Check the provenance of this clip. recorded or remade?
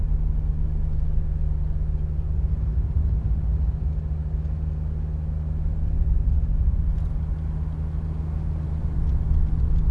recorded